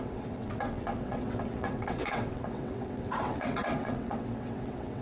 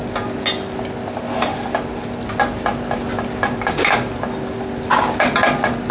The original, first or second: second